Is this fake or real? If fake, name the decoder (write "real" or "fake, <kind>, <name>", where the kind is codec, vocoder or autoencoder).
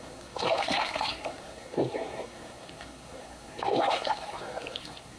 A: fake, codec, SNAC